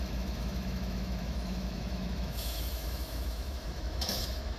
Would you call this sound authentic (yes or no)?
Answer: no